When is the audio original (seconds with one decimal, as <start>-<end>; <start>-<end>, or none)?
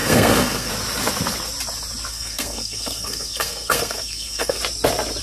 0.7-2.1; 4.6-5.2